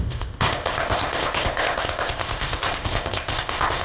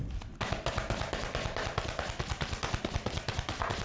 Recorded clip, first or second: second